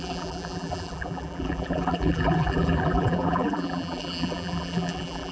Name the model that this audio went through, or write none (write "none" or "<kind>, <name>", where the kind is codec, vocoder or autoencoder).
vocoder, BigVGAN v2